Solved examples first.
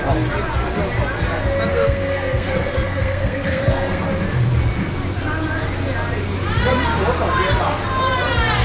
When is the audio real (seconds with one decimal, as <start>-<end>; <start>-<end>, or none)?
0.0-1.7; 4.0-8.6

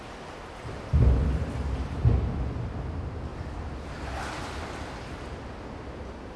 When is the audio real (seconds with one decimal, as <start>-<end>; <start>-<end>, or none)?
0.0-6.4

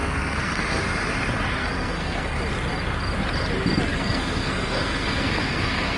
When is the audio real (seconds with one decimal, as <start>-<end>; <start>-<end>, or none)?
0.8-1.6; 2.4-3.9